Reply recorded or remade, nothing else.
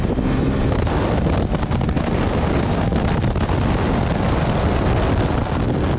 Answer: recorded